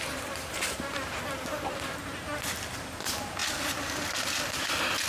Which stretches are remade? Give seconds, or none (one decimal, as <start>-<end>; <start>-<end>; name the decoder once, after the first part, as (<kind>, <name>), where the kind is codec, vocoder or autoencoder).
0.0-2.3 (vocoder, BigVGAN v2); 2.8-3.4